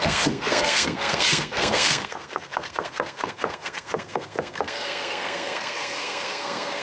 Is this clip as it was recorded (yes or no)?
no